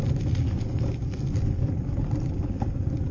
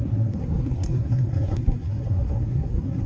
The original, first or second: first